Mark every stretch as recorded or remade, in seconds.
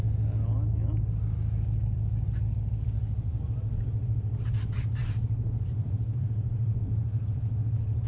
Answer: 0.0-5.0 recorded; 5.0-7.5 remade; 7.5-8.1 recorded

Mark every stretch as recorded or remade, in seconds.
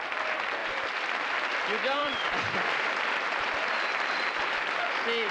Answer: 0.0-0.6 recorded; 0.6-1.3 remade; 1.3-2.0 recorded; 2.0-4.8 remade; 4.8-5.3 recorded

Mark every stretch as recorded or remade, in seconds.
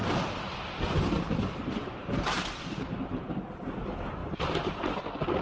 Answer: 0.0-3.2 remade; 3.2-4.2 recorded; 4.2-4.9 remade; 4.9-5.4 recorded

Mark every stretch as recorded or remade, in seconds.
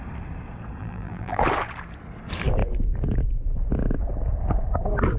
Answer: 0.0-0.8 recorded; 0.8-1.4 remade; 1.4-5.2 recorded